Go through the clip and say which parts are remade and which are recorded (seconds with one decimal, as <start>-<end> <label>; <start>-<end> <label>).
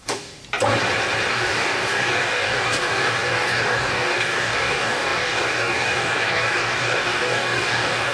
0.0-0.4 remade; 0.4-1.3 recorded; 1.3-8.1 remade